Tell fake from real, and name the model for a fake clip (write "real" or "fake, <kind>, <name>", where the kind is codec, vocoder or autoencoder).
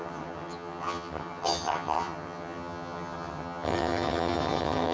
fake, vocoder, HiFi-GAN